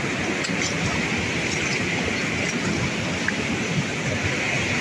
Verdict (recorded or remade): recorded